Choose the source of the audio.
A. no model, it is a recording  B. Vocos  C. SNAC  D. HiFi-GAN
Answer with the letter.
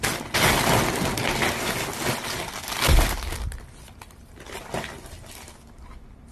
A